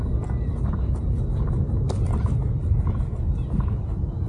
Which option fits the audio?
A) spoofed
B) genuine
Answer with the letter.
B